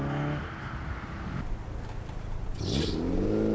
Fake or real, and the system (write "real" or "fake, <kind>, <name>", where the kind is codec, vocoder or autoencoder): real